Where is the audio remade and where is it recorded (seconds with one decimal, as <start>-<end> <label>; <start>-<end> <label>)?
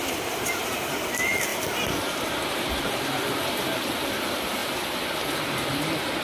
0.0-6.2 recorded